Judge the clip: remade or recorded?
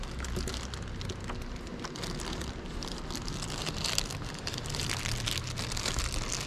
recorded